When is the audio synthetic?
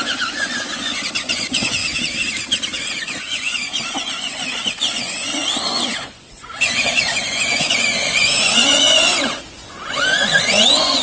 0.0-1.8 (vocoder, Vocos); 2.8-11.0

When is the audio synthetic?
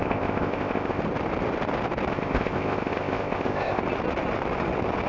0.0-1.0 (codec, ZipCodec); 2.1-3.8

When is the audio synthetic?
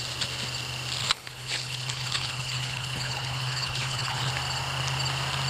1.0-4.3 (codec, HILCodec)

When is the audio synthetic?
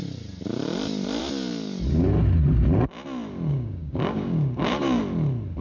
3.5-5.0 (codec, DAC)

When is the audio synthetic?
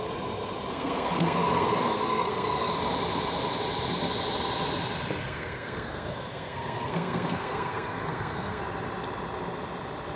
0.7-2.7 (codec, SNAC); 5.2-8.6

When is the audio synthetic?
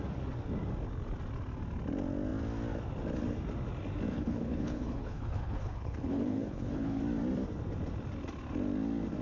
4.1-7.0 (codec, HILCodec)